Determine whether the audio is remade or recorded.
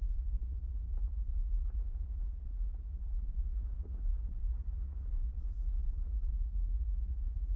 remade